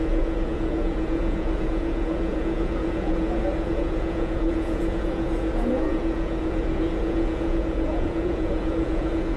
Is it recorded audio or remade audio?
remade